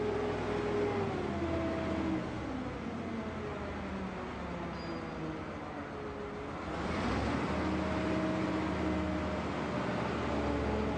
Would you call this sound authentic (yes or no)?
yes